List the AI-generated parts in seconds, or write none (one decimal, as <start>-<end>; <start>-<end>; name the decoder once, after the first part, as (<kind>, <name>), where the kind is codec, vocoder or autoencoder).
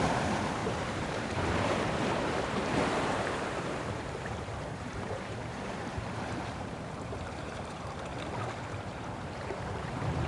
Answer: 0.0-8.1 (vocoder, BigVGAN v2); 8.7-10.3